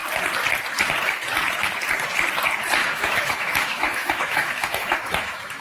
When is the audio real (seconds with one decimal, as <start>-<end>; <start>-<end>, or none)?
0.0-2.8